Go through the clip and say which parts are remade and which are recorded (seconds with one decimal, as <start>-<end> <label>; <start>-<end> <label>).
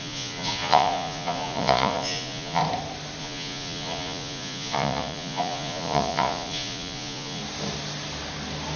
0.0-2.6 remade; 2.6-3.2 recorded; 3.2-7.4 remade; 7.4-8.8 recorded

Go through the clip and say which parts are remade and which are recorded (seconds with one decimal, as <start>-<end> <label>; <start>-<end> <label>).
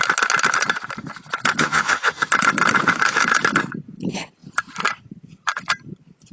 0.0-1.6 recorded; 1.6-2.3 remade; 2.3-6.3 recorded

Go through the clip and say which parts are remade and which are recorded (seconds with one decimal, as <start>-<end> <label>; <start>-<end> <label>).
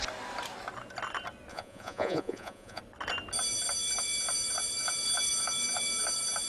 0.0-1.5 recorded; 1.5-2.8 remade; 2.8-6.5 recorded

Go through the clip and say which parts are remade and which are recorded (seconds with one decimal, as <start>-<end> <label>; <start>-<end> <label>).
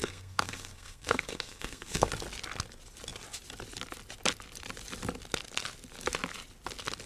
0.0-2.1 remade; 2.1-7.1 recorded